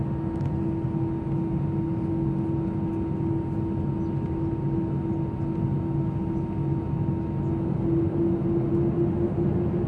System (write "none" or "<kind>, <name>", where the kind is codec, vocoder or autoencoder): none